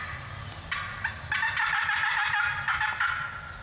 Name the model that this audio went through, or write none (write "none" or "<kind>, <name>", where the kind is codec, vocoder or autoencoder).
none